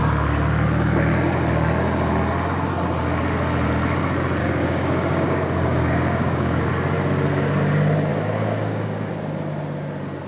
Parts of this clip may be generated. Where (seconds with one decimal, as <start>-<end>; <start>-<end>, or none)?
4.4-6.7; 8.1-9.1